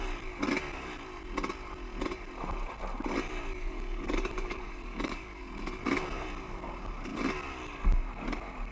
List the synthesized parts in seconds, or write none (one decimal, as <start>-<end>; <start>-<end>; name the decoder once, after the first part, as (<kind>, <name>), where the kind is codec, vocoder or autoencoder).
3.6-5.4 (codec, DAC)